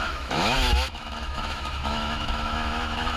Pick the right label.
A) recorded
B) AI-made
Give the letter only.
B